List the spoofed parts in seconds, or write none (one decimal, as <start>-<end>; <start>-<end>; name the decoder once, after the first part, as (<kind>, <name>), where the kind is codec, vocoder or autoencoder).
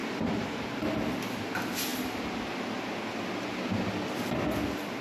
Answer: none